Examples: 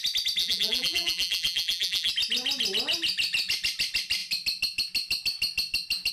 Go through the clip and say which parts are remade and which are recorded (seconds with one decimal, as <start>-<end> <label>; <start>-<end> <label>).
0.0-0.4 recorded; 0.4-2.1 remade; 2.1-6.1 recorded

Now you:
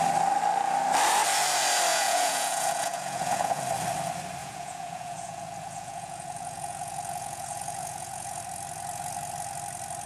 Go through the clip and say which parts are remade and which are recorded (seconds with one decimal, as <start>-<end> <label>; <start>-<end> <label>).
0.0-1.9 recorded; 1.9-3.6 remade; 3.6-4.4 recorded; 4.4-8.4 remade; 8.4-10.1 recorded

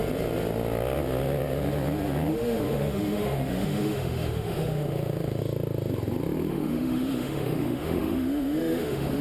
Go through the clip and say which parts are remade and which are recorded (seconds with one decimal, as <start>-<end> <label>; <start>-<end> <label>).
0.0-2.3 recorded; 2.3-5.4 remade; 5.4-6.5 recorded; 6.5-9.2 remade

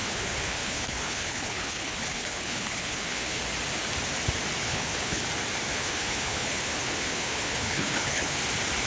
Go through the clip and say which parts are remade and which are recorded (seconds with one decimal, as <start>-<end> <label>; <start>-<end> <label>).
0.0-3.4 remade; 3.4-4.6 recorded; 4.6-5.2 remade; 5.2-5.7 recorded; 5.7-8.4 remade; 8.4-8.9 recorded

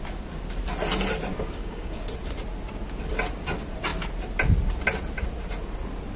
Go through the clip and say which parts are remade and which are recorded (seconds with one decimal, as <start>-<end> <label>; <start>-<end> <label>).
0.0-1.3 recorded; 1.3-2.0 remade; 2.0-6.2 recorded

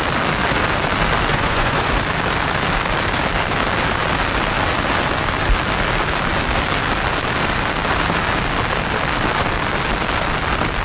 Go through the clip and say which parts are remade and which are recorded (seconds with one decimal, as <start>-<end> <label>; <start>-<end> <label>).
0.0-1.3 recorded; 1.3-1.9 remade; 1.9-10.8 recorded

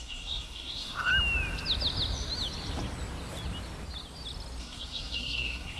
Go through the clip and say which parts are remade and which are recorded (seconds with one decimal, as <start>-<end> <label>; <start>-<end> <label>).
0.0-1.1 remade; 1.1-4.6 recorded; 4.6-5.8 remade

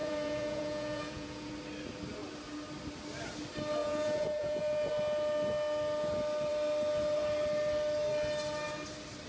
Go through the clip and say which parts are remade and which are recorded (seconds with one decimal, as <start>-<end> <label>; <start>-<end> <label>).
0.0-1.5 remade; 1.5-3.8 recorded; 3.8-4.9 remade; 4.9-9.3 recorded